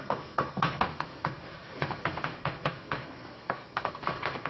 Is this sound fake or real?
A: fake